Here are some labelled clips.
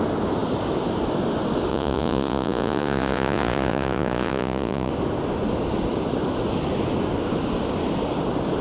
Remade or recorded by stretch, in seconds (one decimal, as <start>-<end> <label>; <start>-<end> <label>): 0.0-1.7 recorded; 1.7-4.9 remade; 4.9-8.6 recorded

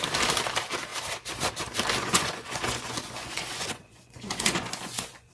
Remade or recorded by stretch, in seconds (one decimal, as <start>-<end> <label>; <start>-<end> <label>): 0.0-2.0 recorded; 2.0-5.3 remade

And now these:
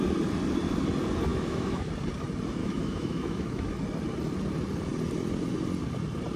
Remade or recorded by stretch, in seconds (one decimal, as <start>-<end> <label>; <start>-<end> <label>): 0.0-1.3 recorded; 1.3-1.9 remade; 1.9-2.6 recorded; 2.6-3.7 remade; 3.7-6.4 recorded

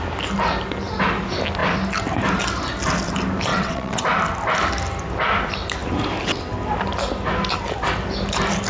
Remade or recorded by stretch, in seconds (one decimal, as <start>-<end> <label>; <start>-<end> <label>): 0.0-3.5 recorded; 3.5-4.0 remade; 4.0-8.7 recorded